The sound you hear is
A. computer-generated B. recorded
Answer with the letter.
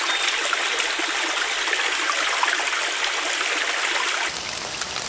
B